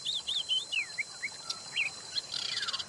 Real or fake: real